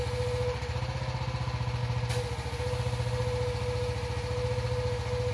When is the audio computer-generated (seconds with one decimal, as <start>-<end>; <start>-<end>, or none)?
none